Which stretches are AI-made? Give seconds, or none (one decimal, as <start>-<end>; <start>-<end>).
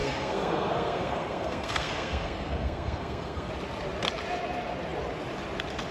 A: 0.0-3.5